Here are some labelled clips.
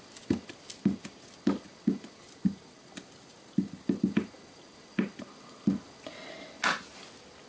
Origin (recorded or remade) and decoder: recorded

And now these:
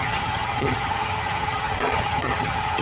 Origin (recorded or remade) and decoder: remade, vocoder, HiFi-GAN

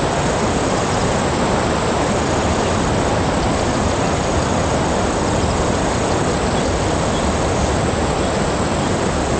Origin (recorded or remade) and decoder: recorded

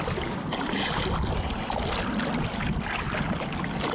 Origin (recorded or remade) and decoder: recorded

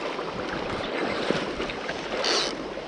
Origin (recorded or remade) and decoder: recorded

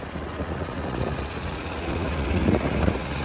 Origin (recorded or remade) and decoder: remade, vocoder, Vocos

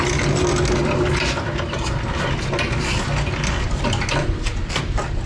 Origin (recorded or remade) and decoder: recorded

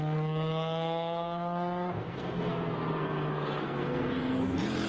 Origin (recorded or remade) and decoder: remade, codec, SNAC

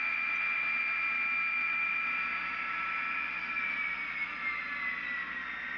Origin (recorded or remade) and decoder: recorded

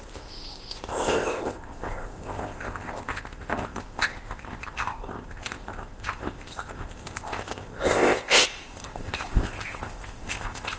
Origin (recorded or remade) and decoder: remade, codec, ZipCodec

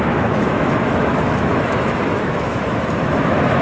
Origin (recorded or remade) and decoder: remade, autoencoder, DAC-VAE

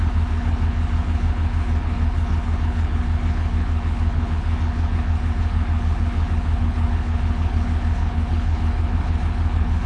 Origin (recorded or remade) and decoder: remade, codec, HILCodec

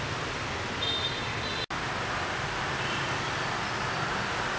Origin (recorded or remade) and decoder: recorded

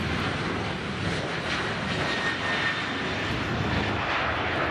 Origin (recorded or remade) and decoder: recorded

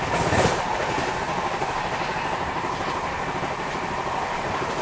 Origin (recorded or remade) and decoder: recorded